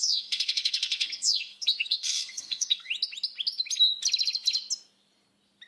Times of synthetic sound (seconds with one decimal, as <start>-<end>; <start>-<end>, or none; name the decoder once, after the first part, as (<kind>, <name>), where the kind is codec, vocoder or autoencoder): 0.0-2.9 (codec, SNAC)